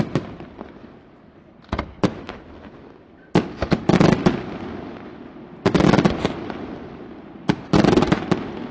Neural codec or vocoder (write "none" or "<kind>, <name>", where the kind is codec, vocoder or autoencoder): none